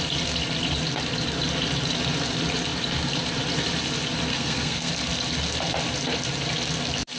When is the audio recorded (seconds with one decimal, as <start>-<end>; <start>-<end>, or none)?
0.0-4.3; 4.9-7.2